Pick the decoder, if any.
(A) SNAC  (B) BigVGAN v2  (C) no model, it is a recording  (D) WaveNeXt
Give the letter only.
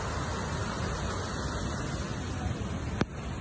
C